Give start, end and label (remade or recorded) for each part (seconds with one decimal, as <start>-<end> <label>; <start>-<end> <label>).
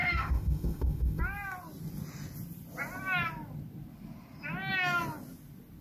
0.0-1.2 remade; 1.2-5.8 recorded